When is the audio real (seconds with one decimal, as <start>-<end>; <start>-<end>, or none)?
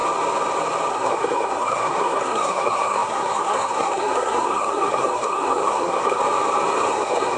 0.0-0.9; 6.2-6.9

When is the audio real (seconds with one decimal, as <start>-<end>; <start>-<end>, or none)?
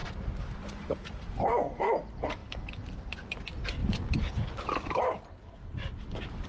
0.9-3.8; 5.0-6.5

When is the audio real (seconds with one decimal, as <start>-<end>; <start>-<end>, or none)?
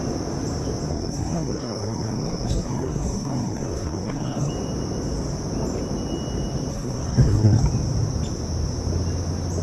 0.0-0.9; 4.5-6.7; 7.6-9.6